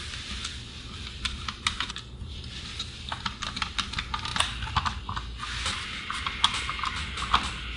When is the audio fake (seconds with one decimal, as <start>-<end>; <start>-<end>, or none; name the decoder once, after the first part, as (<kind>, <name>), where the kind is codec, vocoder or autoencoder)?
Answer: none